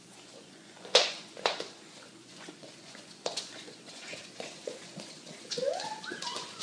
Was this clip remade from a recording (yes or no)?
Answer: yes